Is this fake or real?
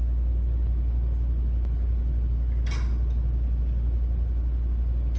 real